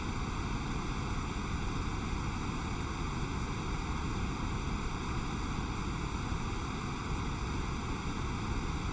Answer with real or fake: real